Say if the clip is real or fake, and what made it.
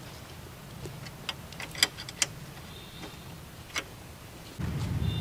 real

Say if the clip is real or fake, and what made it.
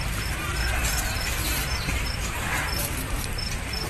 fake, vocoder, BigVGAN v2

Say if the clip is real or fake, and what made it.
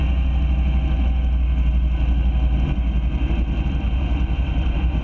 real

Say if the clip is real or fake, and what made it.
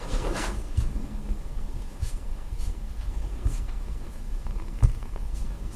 fake, codec, SNAC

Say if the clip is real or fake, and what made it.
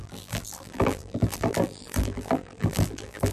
fake, vocoder, BigVGAN v2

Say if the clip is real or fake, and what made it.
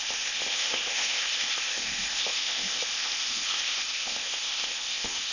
fake, codec, ZipCodec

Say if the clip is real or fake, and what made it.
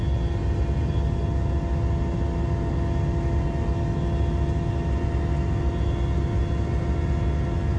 real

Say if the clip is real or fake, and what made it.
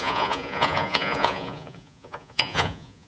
fake, vocoder, Vocos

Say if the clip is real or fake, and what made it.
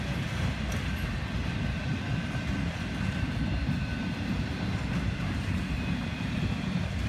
real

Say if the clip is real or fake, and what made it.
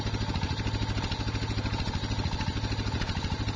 real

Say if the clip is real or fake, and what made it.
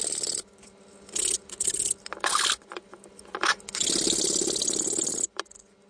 real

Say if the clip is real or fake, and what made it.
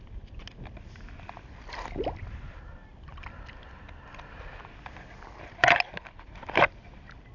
real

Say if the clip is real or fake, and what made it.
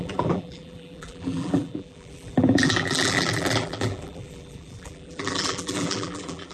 fake, vocoder, BigVGAN v2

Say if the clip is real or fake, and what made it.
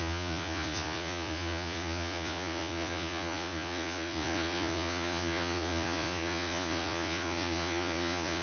fake, vocoder, Vocos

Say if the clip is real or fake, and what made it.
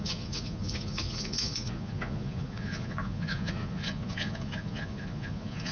fake, vocoder, Vocos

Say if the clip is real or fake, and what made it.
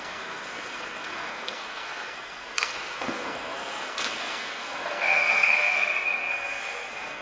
fake, codec, SNAC